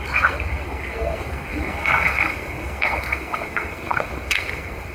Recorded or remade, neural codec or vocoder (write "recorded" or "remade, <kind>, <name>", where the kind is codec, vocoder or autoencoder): remade, codec, SNAC